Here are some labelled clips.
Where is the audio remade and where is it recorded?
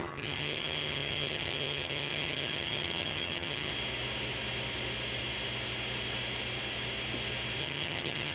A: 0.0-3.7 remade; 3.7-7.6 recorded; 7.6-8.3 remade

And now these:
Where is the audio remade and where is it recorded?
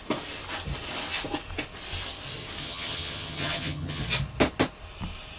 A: 0.0-2.6 recorded; 2.6-4.0 remade; 4.0-5.4 recorded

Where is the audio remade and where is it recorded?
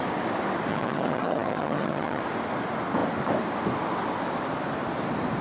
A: 0.0-0.7 recorded; 0.7-2.2 remade; 2.2-5.4 recorded